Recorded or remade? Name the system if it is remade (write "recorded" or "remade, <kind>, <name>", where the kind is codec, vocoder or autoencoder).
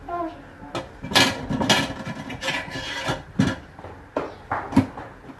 recorded